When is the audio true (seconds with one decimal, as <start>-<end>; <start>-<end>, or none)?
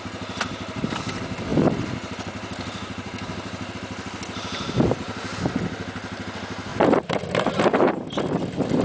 0.0-1.5; 3.7-6.7; 8.4-8.8